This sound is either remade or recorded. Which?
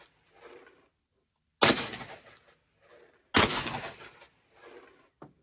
recorded